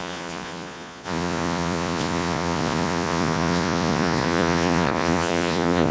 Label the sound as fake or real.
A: fake